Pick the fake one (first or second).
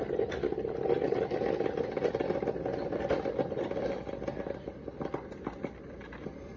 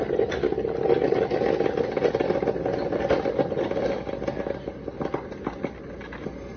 first